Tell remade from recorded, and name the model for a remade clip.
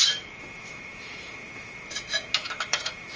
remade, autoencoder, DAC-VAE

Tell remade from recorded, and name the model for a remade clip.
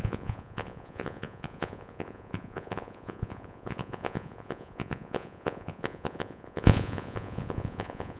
remade, vocoder, Vocos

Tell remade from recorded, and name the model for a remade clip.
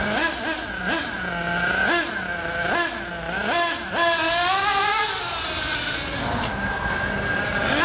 recorded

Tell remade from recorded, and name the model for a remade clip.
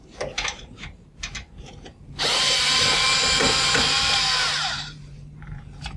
remade, vocoder, BigVGAN v2